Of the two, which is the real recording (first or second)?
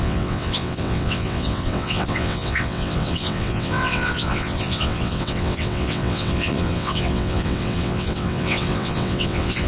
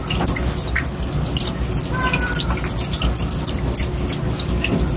second